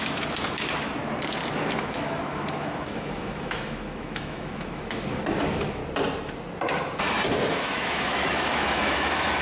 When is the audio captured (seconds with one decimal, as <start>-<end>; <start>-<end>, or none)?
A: 1.0-1.8; 5.8-7.5